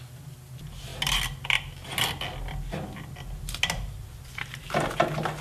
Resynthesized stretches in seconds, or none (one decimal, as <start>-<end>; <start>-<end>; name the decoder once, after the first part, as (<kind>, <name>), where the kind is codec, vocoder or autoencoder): none